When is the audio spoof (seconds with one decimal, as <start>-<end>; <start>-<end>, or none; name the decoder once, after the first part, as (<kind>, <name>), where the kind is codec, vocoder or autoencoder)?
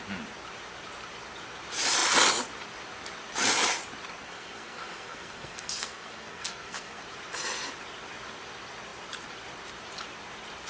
4.2-7.0 (codec, SNAC)